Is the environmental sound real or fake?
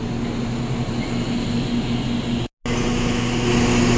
real